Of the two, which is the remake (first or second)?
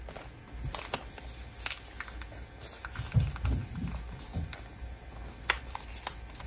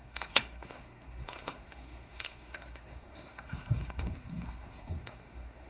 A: second